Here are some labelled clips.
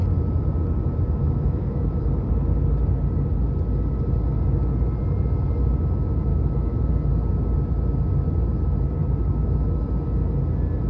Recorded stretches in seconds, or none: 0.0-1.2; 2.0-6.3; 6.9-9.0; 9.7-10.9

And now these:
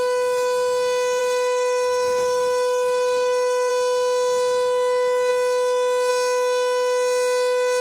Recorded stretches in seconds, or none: 0.0-1.2; 3.7-7.8

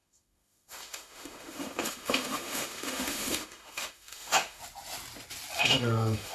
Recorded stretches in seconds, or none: 4.6-5.6

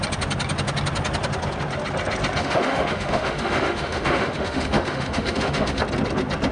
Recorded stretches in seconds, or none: 0.0-2.4; 5.8-6.5

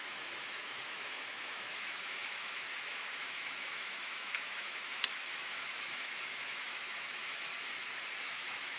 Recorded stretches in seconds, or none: 7.5-8.2